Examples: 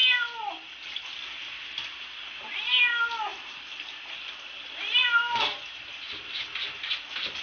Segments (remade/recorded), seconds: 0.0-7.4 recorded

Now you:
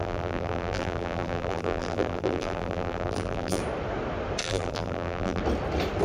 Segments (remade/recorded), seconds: 0.0-3.6 remade; 3.6-4.4 recorded; 4.4-5.4 remade; 5.4-6.0 recorded

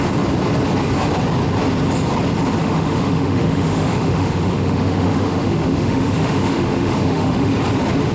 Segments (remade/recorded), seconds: 0.0-2.6 recorded; 2.6-7.5 remade; 7.5-8.1 recorded

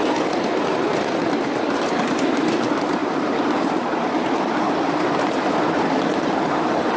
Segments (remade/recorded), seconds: 0.0-7.0 recorded

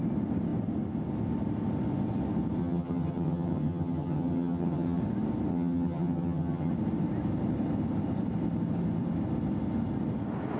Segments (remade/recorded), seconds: 0.0-2.6 recorded; 2.6-5.0 remade; 5.0-5.5 recorded; 5.5-6.7 remade; 6.7-10.6 recorded

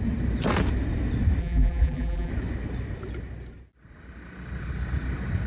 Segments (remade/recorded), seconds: 0.0-1.4 recorded; 1.4-2.3 remade; 2.3-5.5 recorded

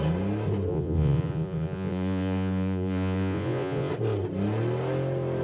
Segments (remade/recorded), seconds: 0.0-0.7 recorded; 0.7-3.9 remade; 3.9-5.4 recorded